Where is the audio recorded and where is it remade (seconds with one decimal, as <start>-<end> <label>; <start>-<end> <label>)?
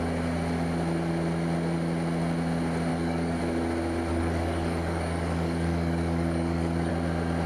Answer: 0.0-2.9 recorded; 2.9-3.4 remade; 3.4-4.1 recorded; 4.1-6.9 remade; 6.9-7.5 recorded